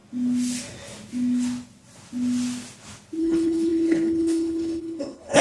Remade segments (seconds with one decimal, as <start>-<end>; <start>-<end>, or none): 3.2-5.4